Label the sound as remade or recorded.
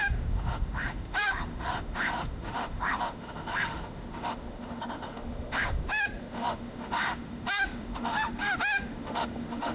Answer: remade